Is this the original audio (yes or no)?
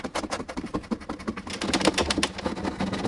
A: yes